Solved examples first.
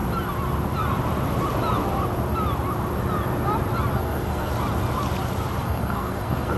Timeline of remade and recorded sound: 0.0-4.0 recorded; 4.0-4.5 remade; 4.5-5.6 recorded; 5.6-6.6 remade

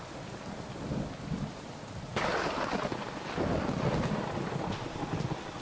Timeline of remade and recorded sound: 0.0-5.6 recorded

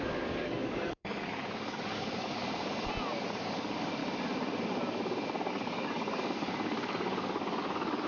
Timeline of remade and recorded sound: 0.0-2.4 remade; 2.4-3.1 recorded; 3.1-4.0 remade; 4.0-5.5 recorded; 5.5-8.1 remade

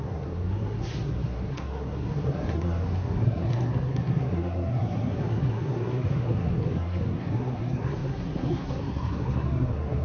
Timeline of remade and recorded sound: 0.0-10.0 remade